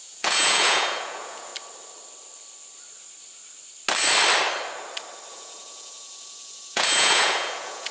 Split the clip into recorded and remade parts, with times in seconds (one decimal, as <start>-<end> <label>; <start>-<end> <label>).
0.0-1.5 remade; 1.5-5.3 recorded; 5.3-7.9 remade

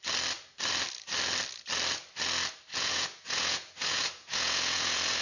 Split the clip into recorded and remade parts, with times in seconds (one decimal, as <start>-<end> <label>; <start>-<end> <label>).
0.0-2.7 recorded; 2.7-5.2 remade